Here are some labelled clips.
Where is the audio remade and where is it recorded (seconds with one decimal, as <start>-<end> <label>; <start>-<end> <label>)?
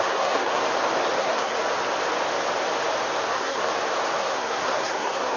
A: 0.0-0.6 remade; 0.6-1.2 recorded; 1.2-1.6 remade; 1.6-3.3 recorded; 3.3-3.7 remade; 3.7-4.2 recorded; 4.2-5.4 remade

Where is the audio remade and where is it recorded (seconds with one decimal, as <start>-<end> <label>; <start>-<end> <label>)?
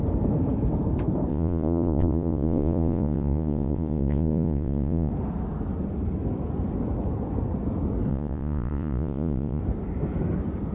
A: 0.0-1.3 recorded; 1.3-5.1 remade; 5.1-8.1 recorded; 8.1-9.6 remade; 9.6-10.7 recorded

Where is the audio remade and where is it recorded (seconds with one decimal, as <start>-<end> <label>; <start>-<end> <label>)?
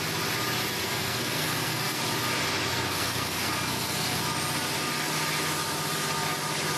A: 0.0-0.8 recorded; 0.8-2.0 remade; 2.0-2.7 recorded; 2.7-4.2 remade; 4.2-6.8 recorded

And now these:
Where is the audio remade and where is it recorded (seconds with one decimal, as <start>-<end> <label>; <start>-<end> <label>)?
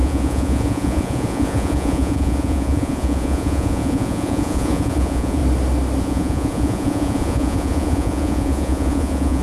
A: 0.0-5.4 remade; 5.4-6.0 recorded; 6.0-9.4 remade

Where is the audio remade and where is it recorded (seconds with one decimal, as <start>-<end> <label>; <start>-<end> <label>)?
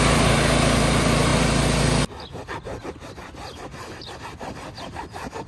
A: 0.0-5.5 recorded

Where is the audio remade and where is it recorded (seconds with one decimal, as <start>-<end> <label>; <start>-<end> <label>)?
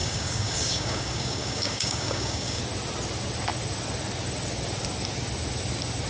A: 0.0-2.6 remade; 2.6-6.1 recorded